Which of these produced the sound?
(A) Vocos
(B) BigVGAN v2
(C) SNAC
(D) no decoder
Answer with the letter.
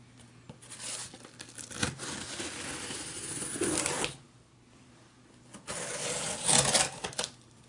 D